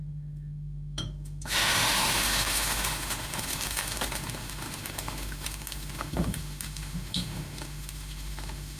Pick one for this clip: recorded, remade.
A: remade